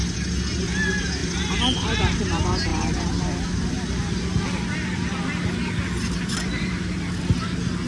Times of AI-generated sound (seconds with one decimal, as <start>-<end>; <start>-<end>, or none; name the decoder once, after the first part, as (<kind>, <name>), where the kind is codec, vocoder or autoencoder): 1.2-2.0 (vocoder, BigVGAN v2); 2.7-7.2